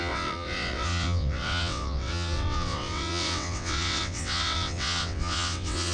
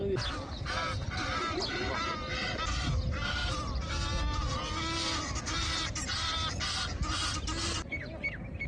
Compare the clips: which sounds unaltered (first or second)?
second